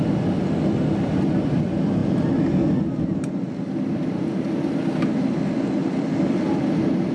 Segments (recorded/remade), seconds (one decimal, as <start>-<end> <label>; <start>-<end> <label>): 0.0-7.1 recorded